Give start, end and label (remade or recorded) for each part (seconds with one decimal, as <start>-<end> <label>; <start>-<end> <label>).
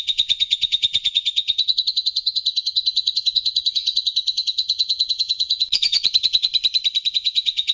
0.0-6.5 remade; 6.5-7.1 recorded; 7.1-7.7 remade